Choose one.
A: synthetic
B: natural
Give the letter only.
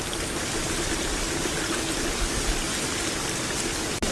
B